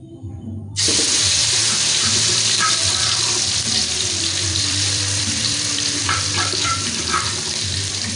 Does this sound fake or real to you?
fake